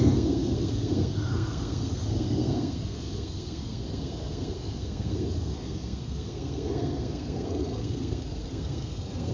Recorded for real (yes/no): no